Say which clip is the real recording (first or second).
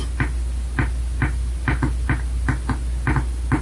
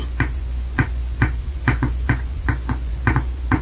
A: first